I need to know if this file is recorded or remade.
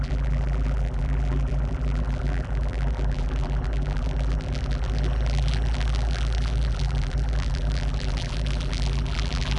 remade